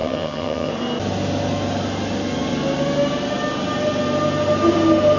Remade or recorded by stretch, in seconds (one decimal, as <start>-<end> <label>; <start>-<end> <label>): 0.0-0.7 remade; 0.7-5.2 recorded